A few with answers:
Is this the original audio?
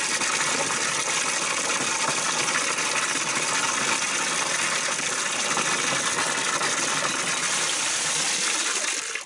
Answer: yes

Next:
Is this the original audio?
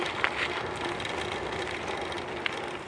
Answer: yes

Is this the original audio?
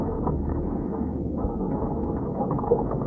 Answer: no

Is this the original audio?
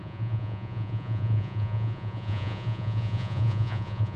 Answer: no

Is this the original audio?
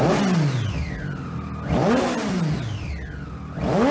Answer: yes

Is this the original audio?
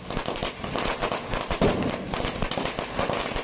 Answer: yes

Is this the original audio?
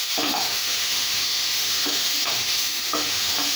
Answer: no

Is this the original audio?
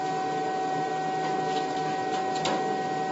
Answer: yes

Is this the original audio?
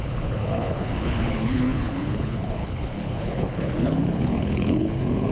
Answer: no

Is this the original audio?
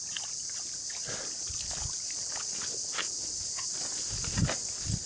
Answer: yes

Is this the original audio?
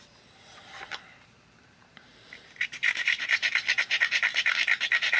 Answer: no